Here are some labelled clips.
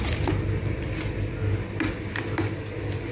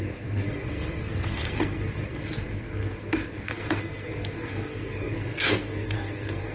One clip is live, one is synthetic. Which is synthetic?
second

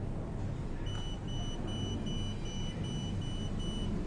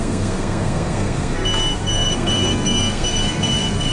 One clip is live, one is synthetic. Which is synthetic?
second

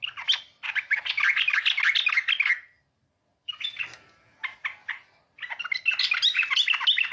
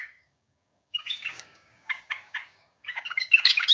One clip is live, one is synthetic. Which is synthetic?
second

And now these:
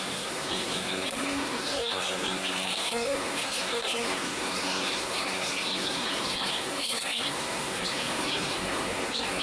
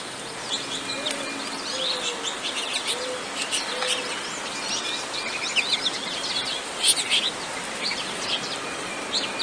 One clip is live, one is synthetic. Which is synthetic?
first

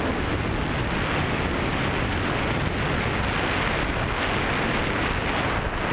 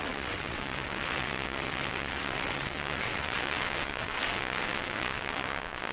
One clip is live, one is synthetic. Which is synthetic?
second